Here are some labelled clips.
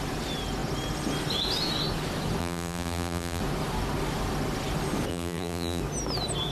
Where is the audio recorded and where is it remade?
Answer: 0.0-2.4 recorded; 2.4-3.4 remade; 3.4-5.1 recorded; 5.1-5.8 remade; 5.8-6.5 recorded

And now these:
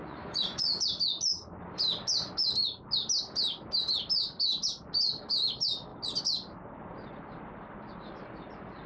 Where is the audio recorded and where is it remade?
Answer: 0.0-0.7 remade; 0.7-8.9 recorded

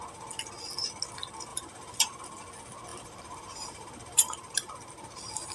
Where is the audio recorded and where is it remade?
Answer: 0.0-1.5 recorded; 1.5-2.4 remade; 2.4-2.9 recorded; 2.9-4.9 remade; 4.9-5.5 recorded

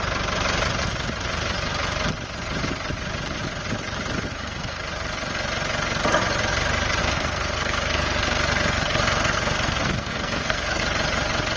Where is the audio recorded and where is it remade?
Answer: 0.0-4.3 recorded; 4.3-4.8 remade; 4.8-7.0 recorded; 7.0-10.8 remade; 10.8-11.6 recorded

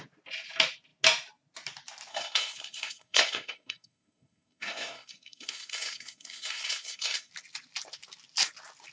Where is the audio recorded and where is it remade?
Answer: 0.0-2.1 recorded; 2.1-7.3 remade; 7.3-8.9 recorded

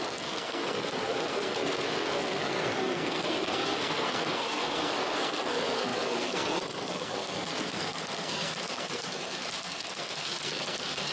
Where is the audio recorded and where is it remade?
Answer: 0.0-11.1 remade

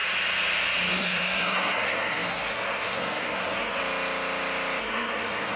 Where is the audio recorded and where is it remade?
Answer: 0.0-0.9 recorded; 0.9-3.8 remade; 3.8-4.8 recorded; 4.8-5.6 remade

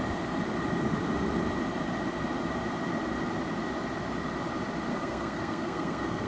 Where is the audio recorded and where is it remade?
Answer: 0.0-4.9 recorded; 4.9-6.3 remade